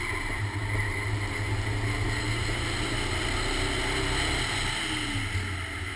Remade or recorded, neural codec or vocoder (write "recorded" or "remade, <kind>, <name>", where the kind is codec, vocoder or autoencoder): recorded